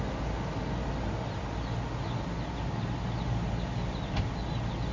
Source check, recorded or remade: recorded